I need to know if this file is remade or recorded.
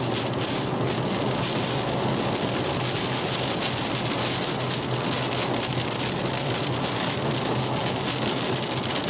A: recorded